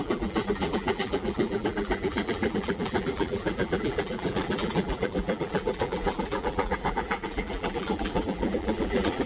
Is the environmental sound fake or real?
fake